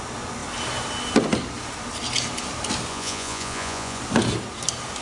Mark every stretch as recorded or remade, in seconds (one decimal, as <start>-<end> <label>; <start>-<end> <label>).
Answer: 0.0-2.9 recorded; 2.9-4.0 remade; 4.0-5.0 recorded